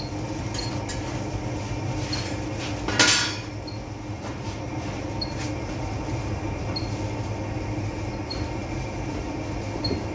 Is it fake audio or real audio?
real